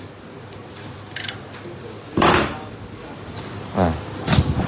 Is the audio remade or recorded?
recorded